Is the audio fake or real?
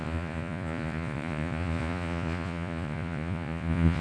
fake